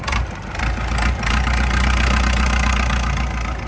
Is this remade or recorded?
recorded